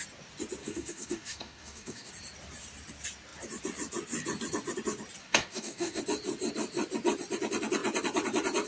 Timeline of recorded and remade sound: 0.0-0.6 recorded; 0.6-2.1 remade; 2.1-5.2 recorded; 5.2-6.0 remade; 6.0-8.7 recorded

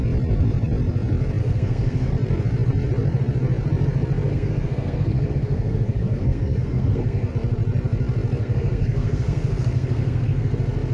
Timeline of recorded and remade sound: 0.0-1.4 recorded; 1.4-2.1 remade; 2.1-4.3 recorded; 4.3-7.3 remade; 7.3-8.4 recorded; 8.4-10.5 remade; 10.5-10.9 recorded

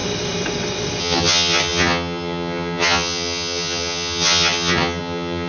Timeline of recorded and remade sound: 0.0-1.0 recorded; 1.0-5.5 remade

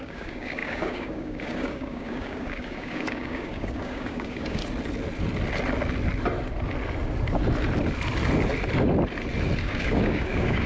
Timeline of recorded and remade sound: 0.0-4.6 remade; 4.6-9.6 recorded; 9.6-10.7 remade

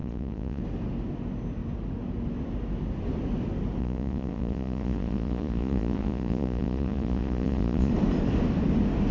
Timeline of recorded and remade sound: 0.0-0.6 remade; 0.6-3.8 recorded; 3.8-7.9 remade; 7.9-9.1 recorded

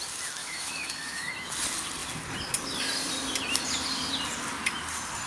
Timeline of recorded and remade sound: 0.0-0.4 recorded; 0.4-1.5 remade; 1.5-5.3 recorded